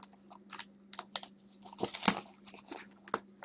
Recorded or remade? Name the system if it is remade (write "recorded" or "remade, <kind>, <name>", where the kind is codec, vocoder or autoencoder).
recorded